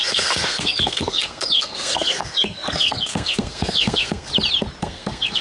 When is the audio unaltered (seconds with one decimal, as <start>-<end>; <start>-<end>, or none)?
4.3-4.8